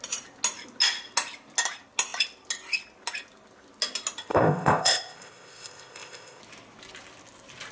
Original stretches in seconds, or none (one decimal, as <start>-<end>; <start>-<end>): 0.0-4.3; 6.4-7.7